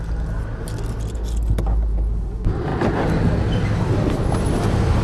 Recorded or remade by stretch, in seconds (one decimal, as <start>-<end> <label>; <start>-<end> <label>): 0.0-5.0 recorded